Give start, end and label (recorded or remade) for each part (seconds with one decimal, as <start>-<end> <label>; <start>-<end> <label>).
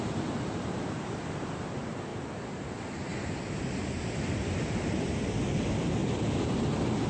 0.0-2.1 recorded; 2.1-2.7 remade; 2.7-7.1 recorded